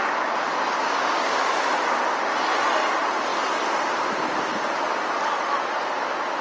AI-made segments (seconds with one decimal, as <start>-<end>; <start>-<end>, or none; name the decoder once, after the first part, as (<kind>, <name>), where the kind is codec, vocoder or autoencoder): 0.8-1.4 (codec, DAC)